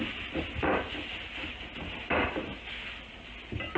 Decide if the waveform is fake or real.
real